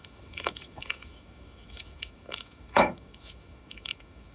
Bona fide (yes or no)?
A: no